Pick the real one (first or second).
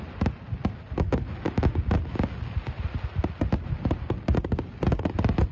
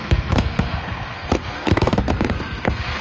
first